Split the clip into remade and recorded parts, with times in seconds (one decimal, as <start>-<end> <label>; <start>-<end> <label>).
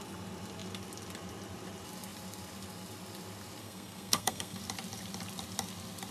0.0-3.6 recorded; 3.6-4.6 remade; 4.6-6.1 recorded